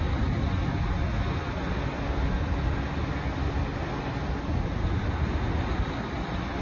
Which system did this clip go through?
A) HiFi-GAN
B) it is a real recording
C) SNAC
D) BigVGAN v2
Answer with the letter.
B